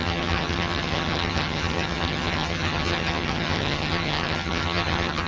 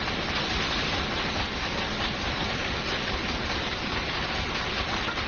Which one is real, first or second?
second